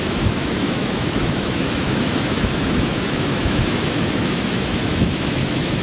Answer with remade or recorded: remade